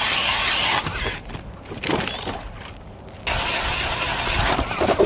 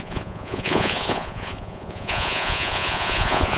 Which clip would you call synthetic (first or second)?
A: second